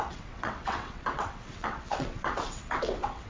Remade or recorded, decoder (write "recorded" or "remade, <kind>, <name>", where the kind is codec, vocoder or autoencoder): remade, vocoder, WaveNeXt